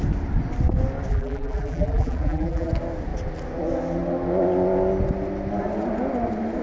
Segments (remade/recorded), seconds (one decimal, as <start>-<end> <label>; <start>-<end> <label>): 0.0-1.1 recorded; 1.1-2.7 remade; 2.7-6.6 recorded